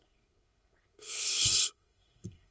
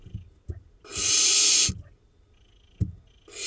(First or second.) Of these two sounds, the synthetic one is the first